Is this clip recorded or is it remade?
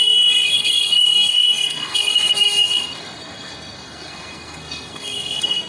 remade